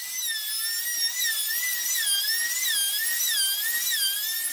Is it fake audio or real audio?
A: real